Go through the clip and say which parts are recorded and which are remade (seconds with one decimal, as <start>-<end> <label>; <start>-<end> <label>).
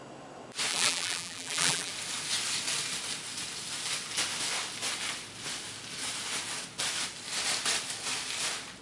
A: 0.0-0.7 recorded; 0.7-1.9 remade; 1.9-8.8 recorded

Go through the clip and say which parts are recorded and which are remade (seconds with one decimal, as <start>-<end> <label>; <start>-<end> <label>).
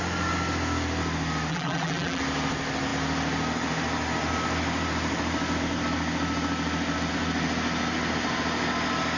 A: 0.0-1.5 recorded; 1.5-2.2 remade; 2.2-9.2 recorded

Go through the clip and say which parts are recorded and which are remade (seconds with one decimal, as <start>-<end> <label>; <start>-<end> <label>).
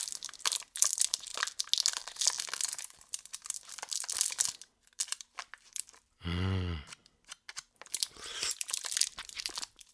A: 0.0-1.3 remade; 1.3-2.8 recorded; 2.8-9.9 remade